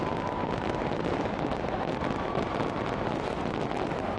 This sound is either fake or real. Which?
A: real